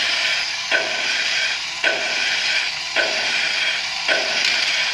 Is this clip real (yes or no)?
no